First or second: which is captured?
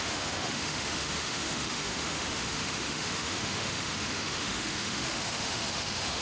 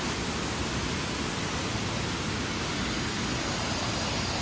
second